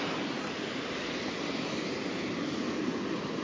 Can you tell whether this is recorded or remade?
recorded